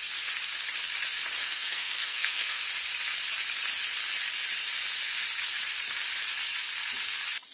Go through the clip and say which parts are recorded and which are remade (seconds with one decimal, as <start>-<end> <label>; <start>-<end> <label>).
0.0-1.4 recorded; 1.4-2.6 remade; 2.6-7.5 recorded